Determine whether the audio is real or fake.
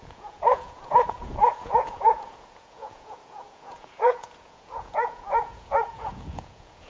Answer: fake